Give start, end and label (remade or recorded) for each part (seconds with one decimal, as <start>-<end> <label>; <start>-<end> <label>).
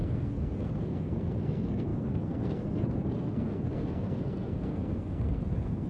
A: 0.0-5.9 remade